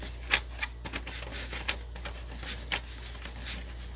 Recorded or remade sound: recorded